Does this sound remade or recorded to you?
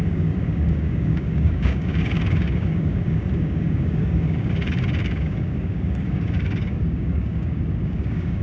remade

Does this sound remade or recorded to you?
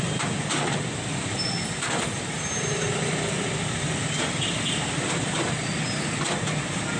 recorded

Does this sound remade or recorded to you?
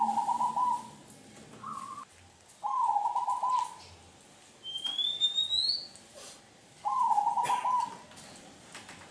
recorded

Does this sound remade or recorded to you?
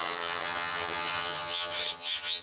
remade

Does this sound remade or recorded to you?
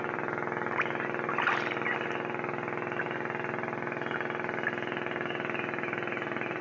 recorded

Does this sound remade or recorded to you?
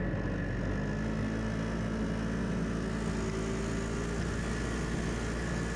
recorded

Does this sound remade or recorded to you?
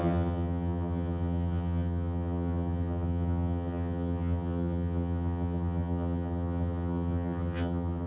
remade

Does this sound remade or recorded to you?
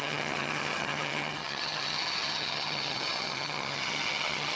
remade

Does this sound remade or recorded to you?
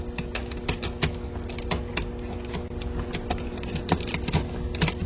recorded